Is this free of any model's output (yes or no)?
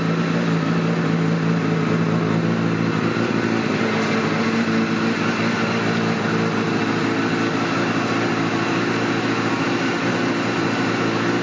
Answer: yes